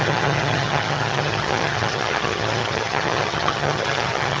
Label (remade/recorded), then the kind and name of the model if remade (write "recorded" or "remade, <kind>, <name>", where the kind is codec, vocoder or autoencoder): remade, vocoder, HiFi-GAN